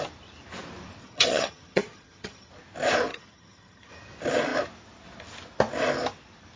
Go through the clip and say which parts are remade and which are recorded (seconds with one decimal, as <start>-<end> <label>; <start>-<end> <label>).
0.0-1.0 recorded; 1.0-2.5 remade; 2.5-3.1 recorded; 3.1-3.9 remade; 3.9-6.6 recorded